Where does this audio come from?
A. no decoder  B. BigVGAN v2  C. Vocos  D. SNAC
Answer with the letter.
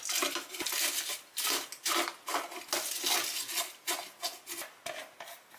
A